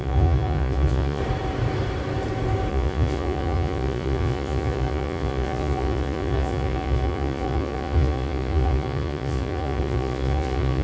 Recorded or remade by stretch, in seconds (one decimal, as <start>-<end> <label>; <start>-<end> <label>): 0.0-1.2 remade; 1.2-2.7 recorded; 2.7-10.8 remade